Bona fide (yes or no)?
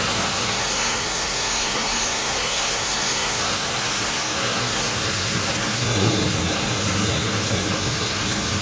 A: no